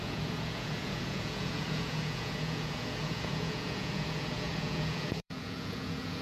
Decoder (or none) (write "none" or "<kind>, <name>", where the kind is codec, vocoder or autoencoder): vocoder, Vocos